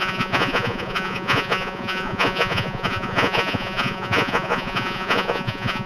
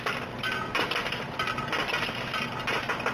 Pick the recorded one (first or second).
second